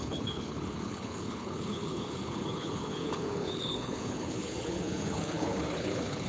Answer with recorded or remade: remade